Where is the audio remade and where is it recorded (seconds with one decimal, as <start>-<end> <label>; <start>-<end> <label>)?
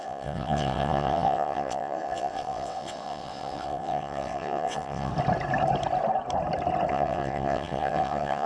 0.0-5.1 remade; 5.1-6.9 recorded; 6.9-8.5 remade